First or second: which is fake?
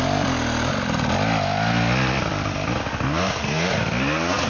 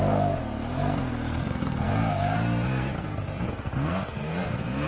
second